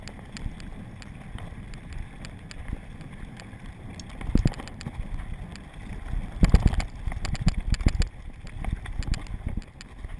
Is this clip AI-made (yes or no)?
no